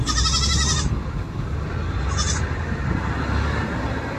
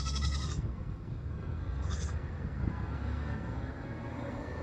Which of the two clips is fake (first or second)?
second